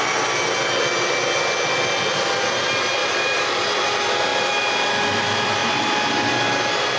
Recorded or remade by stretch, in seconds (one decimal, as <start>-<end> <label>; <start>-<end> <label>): 0.0-3.0 recorded; 3.0-3.6 remade; 3.6-4.3 recorded; 4.3-5.0 remade; 5.0-5.6 recorded; 5.6-6.1 remade; 6.1-7.0 recorded